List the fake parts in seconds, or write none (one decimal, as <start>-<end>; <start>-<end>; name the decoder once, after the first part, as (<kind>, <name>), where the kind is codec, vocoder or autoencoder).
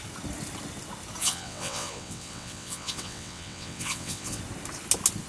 1.2-4.4 (vocoder, WaveNeXt)